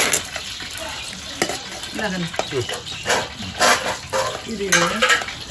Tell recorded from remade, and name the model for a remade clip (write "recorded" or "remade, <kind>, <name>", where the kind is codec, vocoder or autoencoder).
recorded